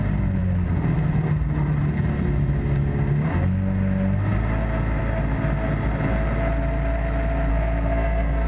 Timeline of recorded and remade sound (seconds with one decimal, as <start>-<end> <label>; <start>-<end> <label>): 0.0-7.5 recorded; 7.5-8.5 remade